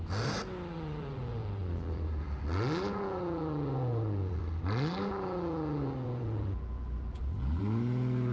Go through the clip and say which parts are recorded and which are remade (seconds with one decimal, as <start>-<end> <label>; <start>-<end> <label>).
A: 0.0-0.7 recorded; 0.7-4.4 remade; 4.4-4.9 recorded; 4.9-7.6 remade; 7.6-8.3 recorded